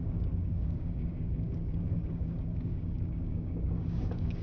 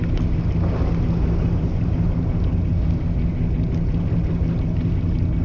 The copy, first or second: first